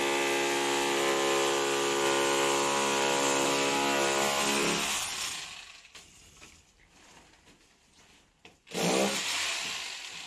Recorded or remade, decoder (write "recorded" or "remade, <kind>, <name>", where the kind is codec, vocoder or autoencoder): recorded